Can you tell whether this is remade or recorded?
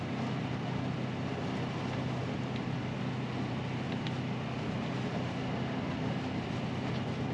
recorded